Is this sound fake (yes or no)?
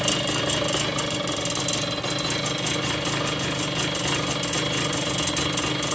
no